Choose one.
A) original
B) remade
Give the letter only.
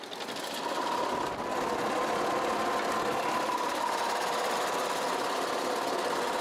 A